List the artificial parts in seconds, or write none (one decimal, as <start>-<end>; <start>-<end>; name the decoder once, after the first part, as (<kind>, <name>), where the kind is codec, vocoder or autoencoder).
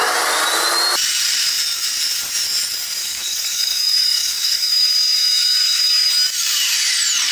3.0-6.1 (codec, DAC)